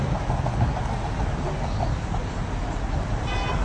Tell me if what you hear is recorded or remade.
recorded